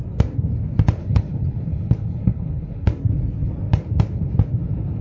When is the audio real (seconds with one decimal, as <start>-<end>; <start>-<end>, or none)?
0.0-1.0; 2.9-5.0